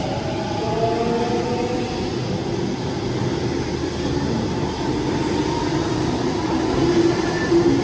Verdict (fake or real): real